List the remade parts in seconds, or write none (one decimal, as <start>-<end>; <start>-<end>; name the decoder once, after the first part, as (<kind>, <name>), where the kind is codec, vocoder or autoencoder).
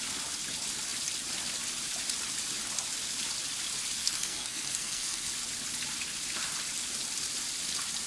4.0-5.3 (codec, SNAC)